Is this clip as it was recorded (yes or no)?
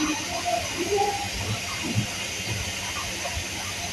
yes